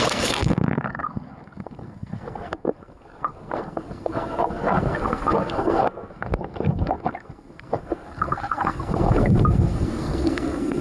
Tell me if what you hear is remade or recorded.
remade